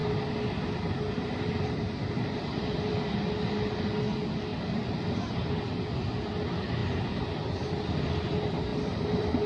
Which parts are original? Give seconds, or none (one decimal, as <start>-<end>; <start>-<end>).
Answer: 2.9-8.7